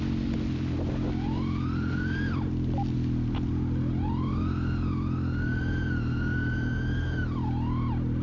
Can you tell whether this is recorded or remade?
recorded